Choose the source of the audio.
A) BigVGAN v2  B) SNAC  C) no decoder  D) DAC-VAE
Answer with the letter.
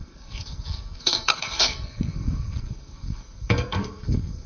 B